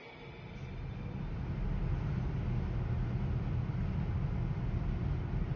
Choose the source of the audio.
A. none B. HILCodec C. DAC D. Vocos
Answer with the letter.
A